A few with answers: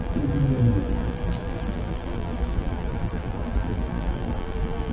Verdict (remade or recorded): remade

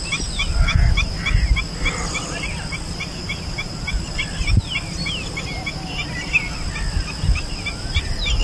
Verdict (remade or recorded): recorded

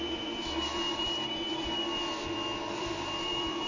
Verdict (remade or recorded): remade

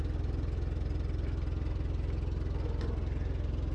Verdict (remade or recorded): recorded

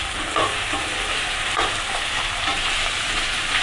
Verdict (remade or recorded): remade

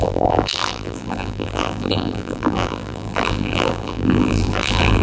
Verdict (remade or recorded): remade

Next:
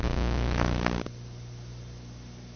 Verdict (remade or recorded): recorded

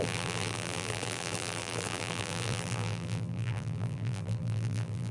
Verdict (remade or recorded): remade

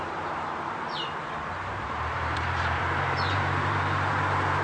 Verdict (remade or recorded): remade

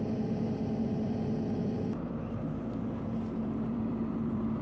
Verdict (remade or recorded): remade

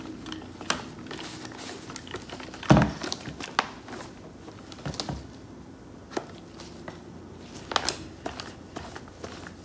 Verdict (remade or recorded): recorded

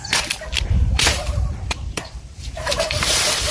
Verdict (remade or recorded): remade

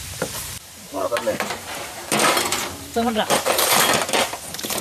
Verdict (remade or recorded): remade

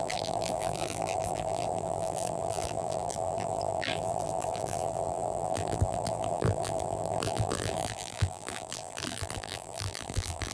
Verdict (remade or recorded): remade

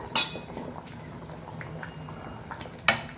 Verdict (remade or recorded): recorded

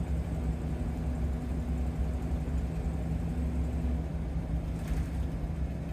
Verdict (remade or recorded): recorded